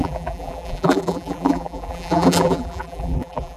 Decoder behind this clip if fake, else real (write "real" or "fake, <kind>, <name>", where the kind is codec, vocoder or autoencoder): fake, vocoder, BigVGAN v2